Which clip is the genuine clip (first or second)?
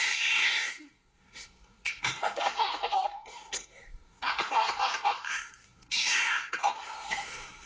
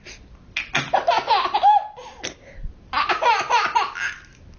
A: second